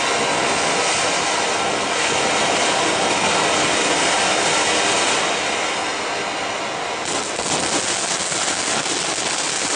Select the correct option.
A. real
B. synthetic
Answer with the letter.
A